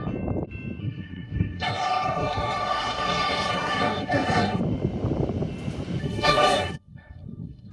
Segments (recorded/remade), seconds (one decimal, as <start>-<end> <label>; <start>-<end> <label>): 0.0-0.8 recorded; 0.8-4.6 remade; 4.6-6.0 recorded; 6.0-7.7 remade